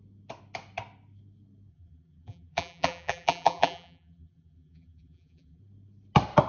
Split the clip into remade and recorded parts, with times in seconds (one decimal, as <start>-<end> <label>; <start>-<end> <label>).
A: 0.0-1.7 recorded; 1.7-5.6 remade; 5.6-6.5 recorded